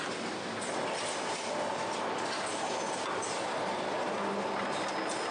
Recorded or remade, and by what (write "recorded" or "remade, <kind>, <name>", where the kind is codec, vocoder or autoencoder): recorded